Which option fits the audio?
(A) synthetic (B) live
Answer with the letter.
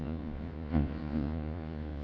A